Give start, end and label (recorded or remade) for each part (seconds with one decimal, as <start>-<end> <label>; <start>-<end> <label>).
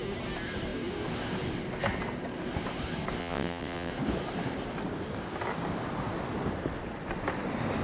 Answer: 0.0-3.2 recorded; 3.2-3.9 remade; 3.9-7.8 recorded